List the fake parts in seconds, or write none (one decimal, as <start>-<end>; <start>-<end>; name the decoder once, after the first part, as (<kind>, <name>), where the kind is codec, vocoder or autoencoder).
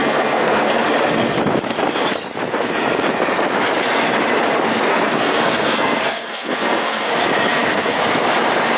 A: 0.0-0.8 (codec, SNAC); 4.9-7.1; 7.5-8.0